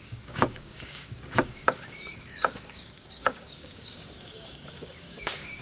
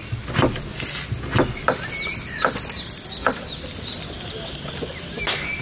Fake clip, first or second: first